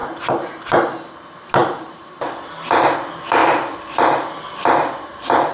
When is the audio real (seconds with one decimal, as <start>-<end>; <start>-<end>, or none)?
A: 0.8-1.6; 2.2-3.4